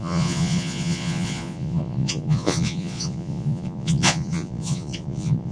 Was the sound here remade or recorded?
remade